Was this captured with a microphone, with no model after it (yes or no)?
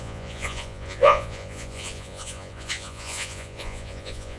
no